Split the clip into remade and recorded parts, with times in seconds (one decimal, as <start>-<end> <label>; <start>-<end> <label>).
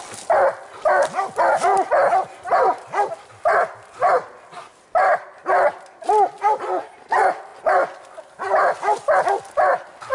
0.0-4.7 recorded; 4.7-5.4 remade; 5.4-10.1 recorded